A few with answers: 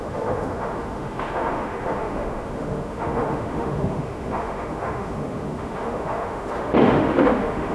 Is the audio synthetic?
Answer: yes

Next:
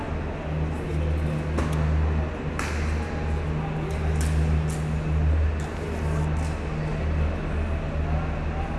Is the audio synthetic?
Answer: no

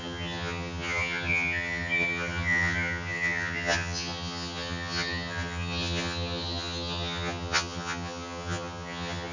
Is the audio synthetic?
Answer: yes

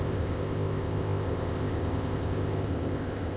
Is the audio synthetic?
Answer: yes